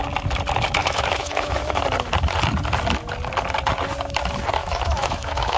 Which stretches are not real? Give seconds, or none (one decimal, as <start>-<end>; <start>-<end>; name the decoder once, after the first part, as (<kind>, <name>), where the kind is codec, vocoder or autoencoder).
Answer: 0.8-1.8 (autoencoder, DAC-VAE); 4.6-5.6